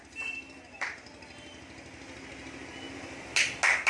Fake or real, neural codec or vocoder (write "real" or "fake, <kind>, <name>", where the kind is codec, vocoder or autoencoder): real